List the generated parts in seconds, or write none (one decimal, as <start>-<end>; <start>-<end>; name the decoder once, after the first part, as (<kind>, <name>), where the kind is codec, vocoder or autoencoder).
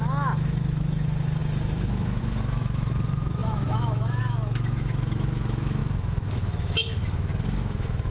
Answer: 0.0-8.1 (autoencoder, DAC-VAE)